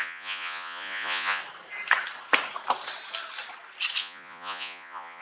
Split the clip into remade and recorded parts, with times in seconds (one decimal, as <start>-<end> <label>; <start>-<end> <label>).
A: 0.0-1.4 remade; 1.4-4.0 recorded; 4.0-5.2 remade